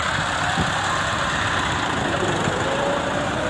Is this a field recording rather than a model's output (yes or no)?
no